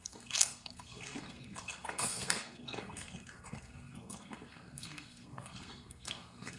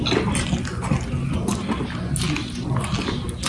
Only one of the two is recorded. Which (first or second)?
second